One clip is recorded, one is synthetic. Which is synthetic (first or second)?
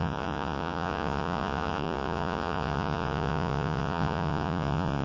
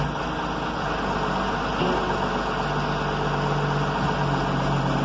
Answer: first